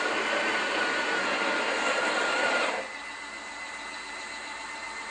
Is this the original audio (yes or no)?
yes